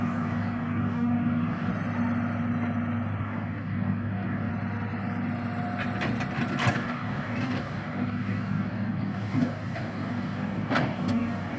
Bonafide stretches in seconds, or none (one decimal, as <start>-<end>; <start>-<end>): 1.7-3.2; 4.5-6.7